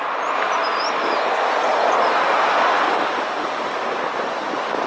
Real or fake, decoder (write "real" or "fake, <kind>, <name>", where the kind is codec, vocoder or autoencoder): real